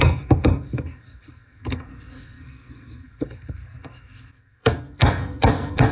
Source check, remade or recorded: remade